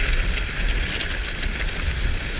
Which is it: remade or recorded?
recorded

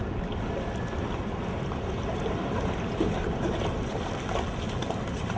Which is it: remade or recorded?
recorded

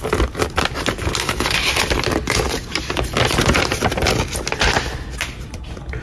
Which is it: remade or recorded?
recorded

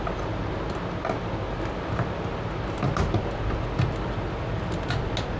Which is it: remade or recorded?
recorded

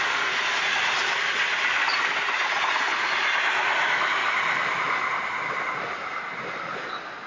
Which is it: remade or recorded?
recorded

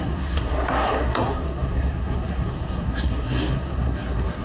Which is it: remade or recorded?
remade